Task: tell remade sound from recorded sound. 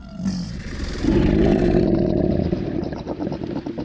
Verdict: remade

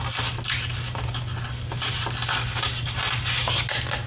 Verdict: recorded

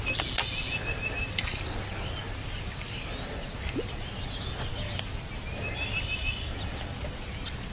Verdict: recorded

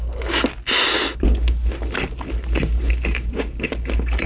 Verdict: recorded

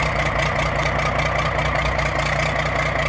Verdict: recorded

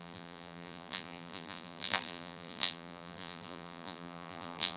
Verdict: remade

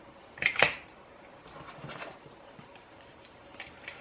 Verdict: remade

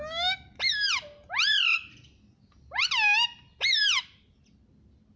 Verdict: recorded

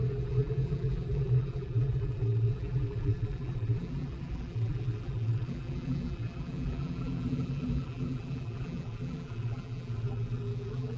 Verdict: remade